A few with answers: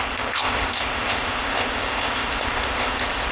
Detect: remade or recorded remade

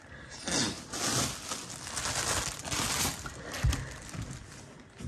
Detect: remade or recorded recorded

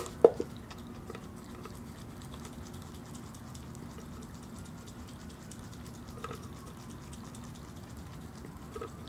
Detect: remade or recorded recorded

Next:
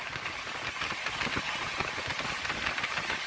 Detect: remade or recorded recorded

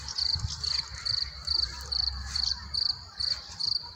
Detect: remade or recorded remade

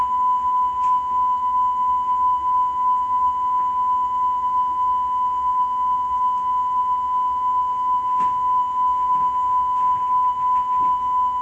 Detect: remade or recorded recorded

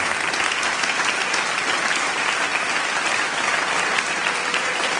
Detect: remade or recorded remade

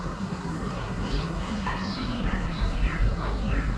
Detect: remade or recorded remade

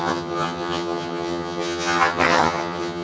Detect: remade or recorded remade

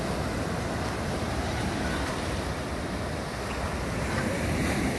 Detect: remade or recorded recorded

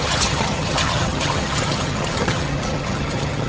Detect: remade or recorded remade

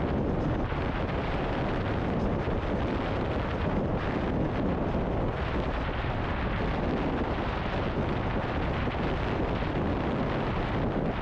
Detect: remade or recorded recorded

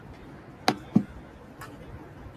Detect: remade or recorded recorded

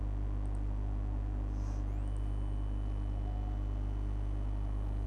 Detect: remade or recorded recorded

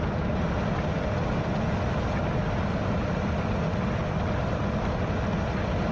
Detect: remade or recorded recorded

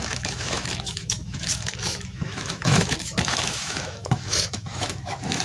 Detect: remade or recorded remade